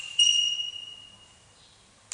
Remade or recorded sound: recorded